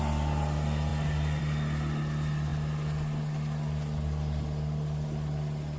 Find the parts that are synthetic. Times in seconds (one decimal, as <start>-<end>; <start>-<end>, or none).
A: none